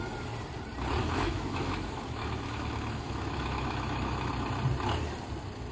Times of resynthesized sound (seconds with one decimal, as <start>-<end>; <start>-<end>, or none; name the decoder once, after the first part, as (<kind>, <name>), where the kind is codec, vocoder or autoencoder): 1.0-4.3 (autoencoder, DAC-VAE)